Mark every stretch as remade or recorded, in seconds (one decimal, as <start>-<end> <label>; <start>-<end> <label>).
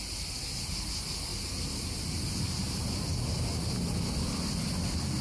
0.0-1.3 recorded; 1.3-2.9 remade; 2.9-5.2 recorded